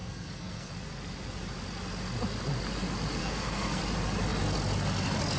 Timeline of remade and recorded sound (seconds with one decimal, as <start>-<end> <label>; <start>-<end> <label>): 0.0-0.7 remade; 0.7-3.2 recorded; 3.2-3.8 remade; 3.8-5.4 recorded